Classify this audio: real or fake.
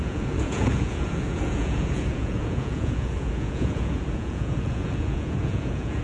fake